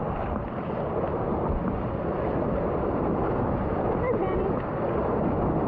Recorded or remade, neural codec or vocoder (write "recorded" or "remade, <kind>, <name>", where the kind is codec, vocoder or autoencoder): recorded